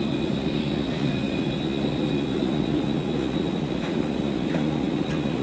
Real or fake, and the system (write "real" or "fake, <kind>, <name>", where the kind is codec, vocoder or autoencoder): fake, vocoder, Vocos